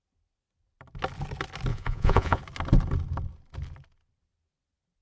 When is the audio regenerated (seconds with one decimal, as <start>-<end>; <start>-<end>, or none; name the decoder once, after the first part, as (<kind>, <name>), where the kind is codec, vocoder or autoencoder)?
1.7-2.4 (vocoder, Vocos)